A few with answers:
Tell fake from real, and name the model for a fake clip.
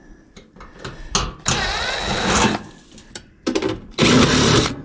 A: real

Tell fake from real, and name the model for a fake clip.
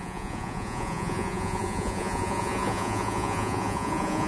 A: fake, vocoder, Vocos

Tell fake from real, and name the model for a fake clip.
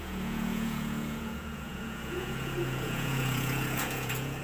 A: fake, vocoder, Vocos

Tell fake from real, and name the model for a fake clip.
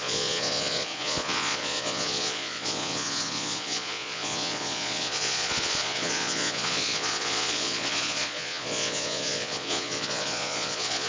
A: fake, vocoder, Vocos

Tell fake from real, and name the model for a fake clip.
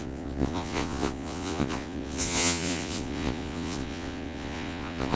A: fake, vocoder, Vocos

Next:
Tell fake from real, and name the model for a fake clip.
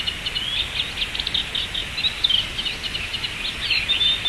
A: real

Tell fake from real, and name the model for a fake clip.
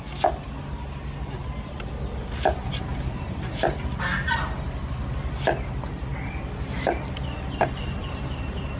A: real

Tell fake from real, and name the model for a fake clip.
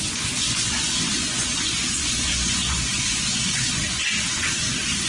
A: fake, vocoder, Vocos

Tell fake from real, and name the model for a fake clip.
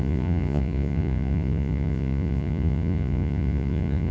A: fake, vocoder, Vocos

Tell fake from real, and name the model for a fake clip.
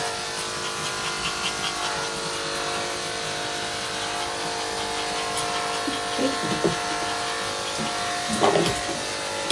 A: real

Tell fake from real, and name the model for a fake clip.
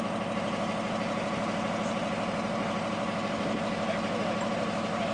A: real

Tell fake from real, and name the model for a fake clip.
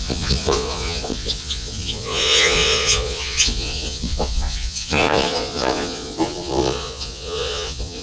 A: fake, vocoder, Vocos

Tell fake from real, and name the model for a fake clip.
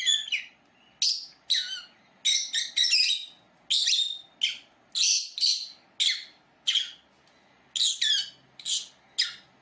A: real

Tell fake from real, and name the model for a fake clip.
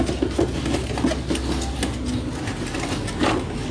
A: real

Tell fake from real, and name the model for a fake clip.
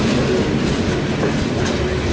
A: real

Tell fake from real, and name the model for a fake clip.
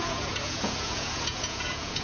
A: fake, vocoder, Vocos